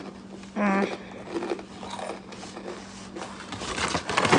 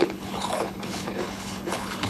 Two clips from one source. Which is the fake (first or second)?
second